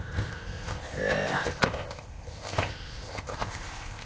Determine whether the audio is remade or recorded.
remade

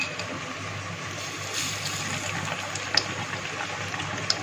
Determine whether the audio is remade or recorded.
remade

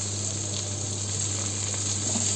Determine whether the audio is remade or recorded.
recorded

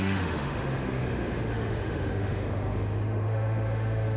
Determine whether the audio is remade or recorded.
remade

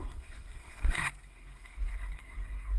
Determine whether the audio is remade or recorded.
remade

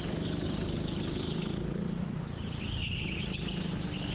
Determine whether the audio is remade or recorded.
recorded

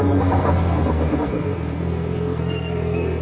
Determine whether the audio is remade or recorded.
remade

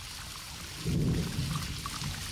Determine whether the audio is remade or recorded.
recorded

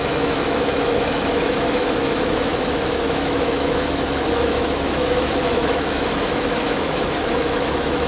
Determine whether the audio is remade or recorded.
remade